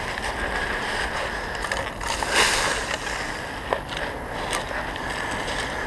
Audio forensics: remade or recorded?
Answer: recorded